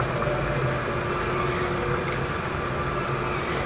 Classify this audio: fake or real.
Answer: real